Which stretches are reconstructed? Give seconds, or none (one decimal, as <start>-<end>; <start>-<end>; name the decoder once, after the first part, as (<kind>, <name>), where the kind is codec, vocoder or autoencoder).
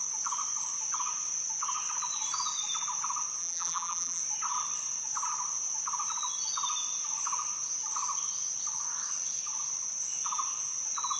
3.4-4.2 (vocoder, BigVGAN v2)